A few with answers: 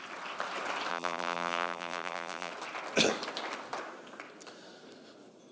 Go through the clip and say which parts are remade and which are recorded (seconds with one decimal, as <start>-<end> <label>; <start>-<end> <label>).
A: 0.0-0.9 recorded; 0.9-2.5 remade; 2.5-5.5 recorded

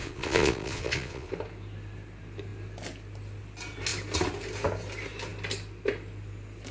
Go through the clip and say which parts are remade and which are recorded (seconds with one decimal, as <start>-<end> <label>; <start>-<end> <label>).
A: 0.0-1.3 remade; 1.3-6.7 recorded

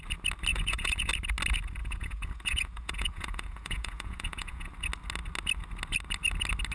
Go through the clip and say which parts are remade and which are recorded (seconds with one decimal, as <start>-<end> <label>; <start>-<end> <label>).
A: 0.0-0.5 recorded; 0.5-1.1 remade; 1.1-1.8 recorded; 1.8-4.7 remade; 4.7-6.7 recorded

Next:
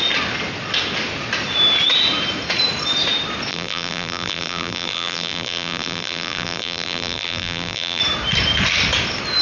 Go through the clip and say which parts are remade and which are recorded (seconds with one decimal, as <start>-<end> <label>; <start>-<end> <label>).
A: 0.0-3.5 recorded; 3.5-8.0 remade; 8.0-9.4 recorded